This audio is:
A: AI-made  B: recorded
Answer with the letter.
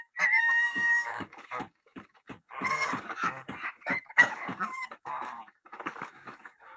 A